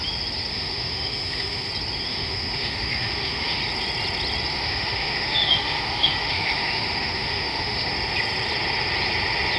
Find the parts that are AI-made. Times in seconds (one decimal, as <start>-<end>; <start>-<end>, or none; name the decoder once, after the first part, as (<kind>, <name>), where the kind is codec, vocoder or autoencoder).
0.5-1.7 (autoencoder, DAC-VAE); 2.1-3.6; 4.5-7.9